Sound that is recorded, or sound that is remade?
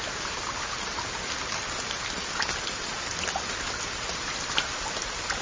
recorded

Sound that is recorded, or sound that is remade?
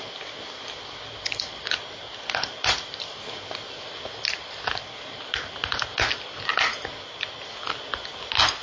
recorded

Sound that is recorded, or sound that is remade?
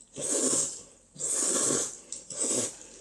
recorded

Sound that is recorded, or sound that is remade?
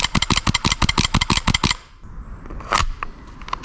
recorded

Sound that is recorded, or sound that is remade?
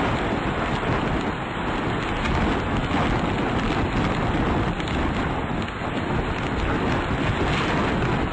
recorded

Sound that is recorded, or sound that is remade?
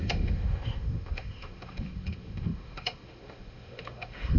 remade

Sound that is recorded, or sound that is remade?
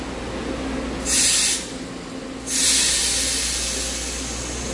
recorded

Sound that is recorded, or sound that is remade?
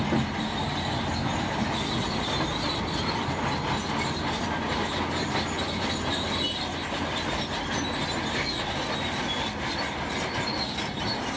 recorded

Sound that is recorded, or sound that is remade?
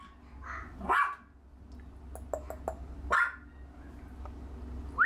recorded